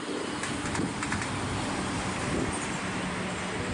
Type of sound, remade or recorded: recorded